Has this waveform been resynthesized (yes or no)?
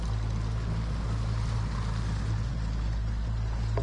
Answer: no